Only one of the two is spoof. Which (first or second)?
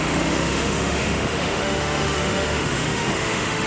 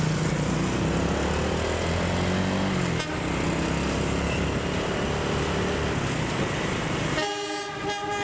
first